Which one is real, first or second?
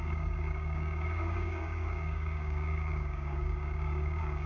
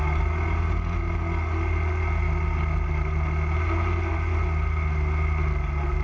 second